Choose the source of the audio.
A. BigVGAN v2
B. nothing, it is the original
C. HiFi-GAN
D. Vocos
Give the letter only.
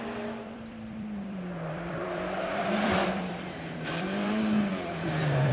A